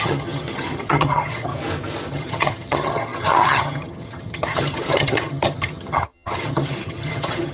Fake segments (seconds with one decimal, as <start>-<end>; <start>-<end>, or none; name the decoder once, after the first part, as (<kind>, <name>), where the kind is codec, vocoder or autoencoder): 0.0-1.5 (vocoder, HiFi-GAN); 2.1-7.5